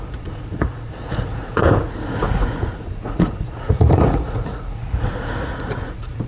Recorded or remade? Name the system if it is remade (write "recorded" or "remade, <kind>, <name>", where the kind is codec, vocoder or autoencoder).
remade, vocoder, Vocos